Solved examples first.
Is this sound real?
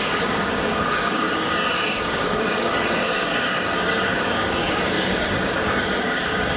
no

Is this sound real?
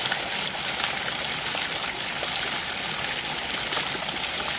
yes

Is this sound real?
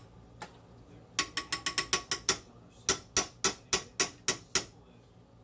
yes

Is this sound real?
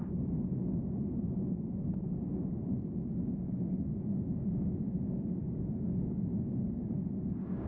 no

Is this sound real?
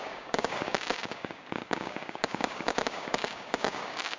no